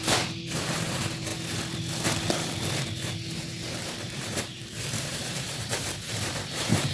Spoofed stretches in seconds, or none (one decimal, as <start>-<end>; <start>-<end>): 0.0-1.3; 3.1-6.9